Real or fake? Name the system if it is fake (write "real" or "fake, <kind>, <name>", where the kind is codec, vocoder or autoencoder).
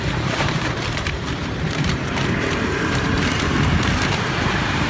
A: fake, vocoder, BigVGAN v2